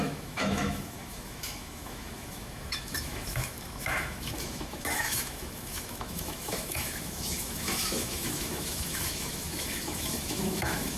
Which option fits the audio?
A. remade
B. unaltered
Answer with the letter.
A